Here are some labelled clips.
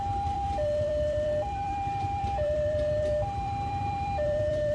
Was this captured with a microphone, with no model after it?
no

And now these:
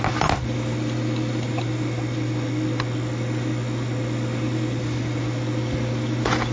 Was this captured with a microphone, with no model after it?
yes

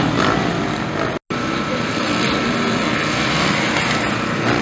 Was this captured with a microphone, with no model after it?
yes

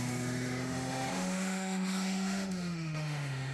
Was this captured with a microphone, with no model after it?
no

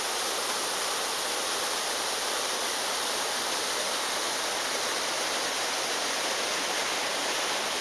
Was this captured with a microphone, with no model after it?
yes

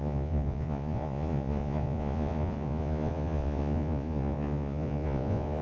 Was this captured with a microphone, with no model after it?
no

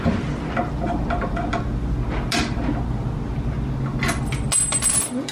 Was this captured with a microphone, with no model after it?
yes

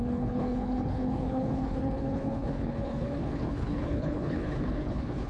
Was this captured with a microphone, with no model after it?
no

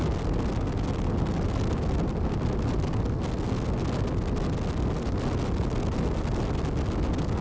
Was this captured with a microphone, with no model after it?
yes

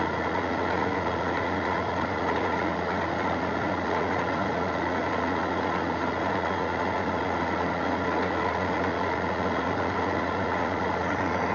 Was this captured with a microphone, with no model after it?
no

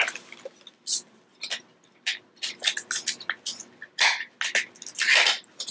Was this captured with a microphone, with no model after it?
yes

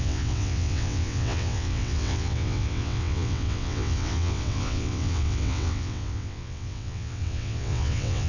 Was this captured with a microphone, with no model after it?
no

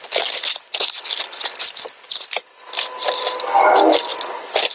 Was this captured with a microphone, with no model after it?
yes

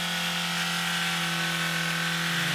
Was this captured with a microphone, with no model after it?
yes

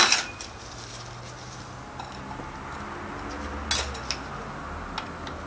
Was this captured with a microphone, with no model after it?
yes